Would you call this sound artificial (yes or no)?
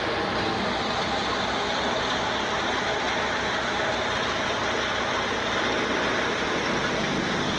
no